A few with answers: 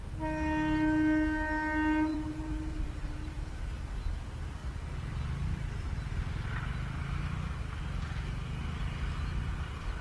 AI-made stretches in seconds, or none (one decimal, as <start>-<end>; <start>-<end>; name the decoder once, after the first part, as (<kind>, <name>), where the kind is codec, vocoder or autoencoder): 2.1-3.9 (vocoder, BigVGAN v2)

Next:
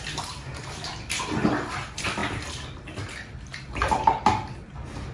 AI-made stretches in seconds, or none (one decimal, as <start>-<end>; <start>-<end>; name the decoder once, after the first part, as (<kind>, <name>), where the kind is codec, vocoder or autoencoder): none

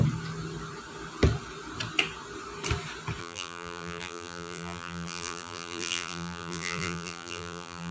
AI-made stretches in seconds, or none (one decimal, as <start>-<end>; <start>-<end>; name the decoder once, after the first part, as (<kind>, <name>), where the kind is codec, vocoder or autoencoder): 3.2-7.9 (vocoder, BigVGAN v2)